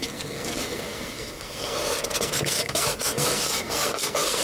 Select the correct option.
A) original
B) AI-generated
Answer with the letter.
B